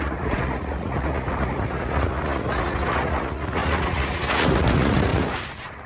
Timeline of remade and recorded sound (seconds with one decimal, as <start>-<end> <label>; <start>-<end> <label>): 0.0-5.9 remade